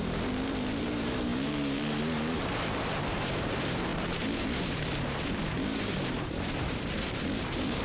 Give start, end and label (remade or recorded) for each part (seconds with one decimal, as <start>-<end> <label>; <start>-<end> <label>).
0.0-7.8 remade